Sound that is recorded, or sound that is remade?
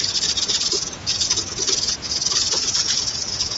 remade